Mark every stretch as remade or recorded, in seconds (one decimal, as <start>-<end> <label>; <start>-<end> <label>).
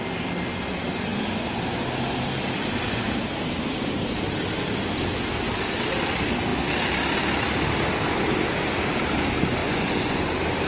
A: 0.0-9.6 recorded; 9.6-10.2 remade; 10.2-10.7 recorded